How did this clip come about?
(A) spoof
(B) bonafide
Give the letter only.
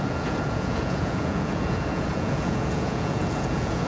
A